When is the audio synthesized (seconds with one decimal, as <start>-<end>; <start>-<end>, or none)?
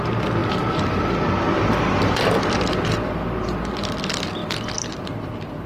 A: 0.4-3.7; 4.4-5.3